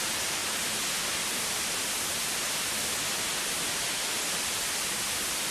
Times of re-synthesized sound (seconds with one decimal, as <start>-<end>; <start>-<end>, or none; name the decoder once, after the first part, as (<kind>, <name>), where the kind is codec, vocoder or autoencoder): none